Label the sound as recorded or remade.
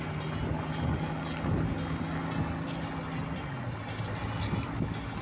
recorded